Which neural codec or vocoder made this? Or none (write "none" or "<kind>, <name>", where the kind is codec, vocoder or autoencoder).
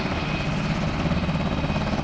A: none